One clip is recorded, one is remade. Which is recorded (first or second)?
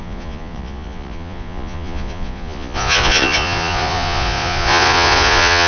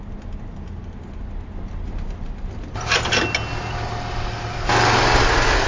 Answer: second